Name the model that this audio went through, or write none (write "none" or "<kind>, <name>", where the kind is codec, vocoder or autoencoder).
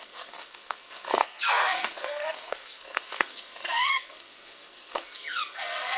codec, SNAC